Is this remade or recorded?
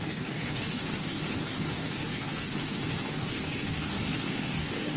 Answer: remade